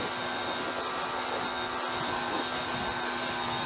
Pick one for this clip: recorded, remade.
recorded